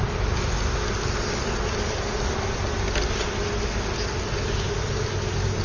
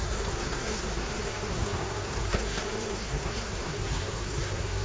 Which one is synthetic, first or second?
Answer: second